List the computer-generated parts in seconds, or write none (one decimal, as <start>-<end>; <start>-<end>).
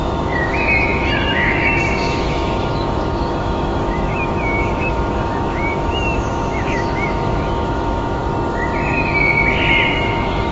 0.0-8.2; 9.9-10.5